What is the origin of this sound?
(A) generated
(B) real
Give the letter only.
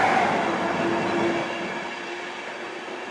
B